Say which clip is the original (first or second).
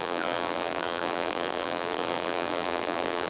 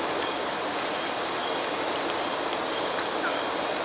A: second